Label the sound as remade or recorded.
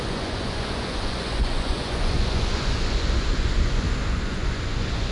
remade